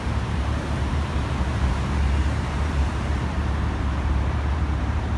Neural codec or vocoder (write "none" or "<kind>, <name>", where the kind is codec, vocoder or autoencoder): vocoder, BigVGAN v2